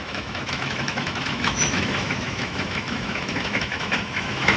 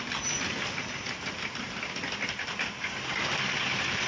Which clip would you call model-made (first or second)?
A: first